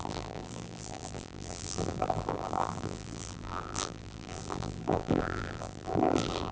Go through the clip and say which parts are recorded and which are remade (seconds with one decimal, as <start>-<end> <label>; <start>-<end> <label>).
0.0-6.5 remade